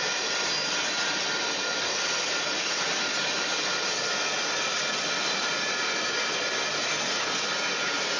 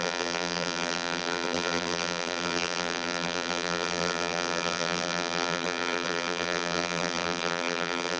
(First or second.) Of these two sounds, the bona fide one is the first